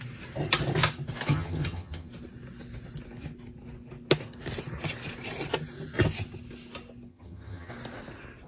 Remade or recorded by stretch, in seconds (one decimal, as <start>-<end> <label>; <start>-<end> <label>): 0.0-1.3 recorded; 1.3-2.1 remade; 2.1-7.1 recorded; 7.1-7.7 remade; 7.7-8.5 recorded